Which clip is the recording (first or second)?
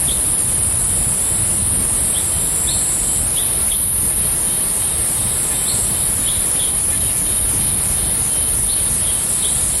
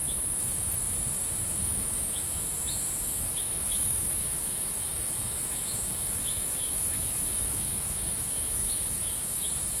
first